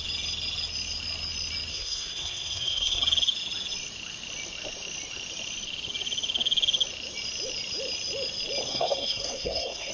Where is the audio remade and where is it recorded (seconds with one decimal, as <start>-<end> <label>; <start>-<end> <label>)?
0.0-1.7 recorded; 1.7-3.0 remade; 3.0-8.7 recorded; 8.7-9.9 remade